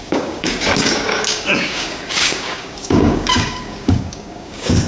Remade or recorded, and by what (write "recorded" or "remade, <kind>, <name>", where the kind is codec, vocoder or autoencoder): remade, codec, DAC